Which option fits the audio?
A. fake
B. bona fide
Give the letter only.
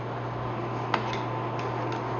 B